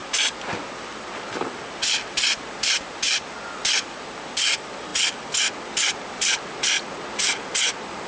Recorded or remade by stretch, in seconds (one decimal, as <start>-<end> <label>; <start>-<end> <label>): 0.0-8.1 recorded